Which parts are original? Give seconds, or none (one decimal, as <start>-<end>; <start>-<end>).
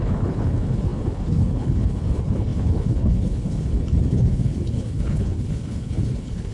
none